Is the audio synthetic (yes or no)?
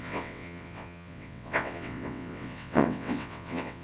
yes